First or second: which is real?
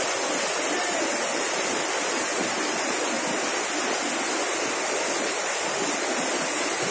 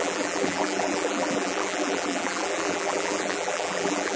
first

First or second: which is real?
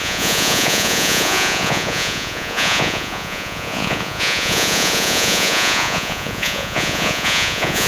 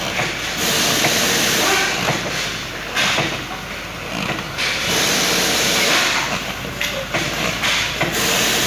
second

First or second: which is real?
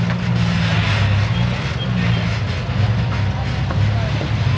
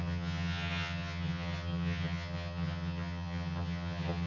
first